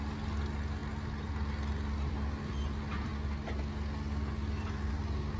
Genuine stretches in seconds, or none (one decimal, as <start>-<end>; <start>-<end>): 0.0-5.4